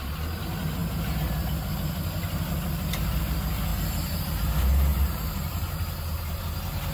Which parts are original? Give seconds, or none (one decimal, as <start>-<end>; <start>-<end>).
0.0-3.7; 4.3-4.9; 6.4-6.9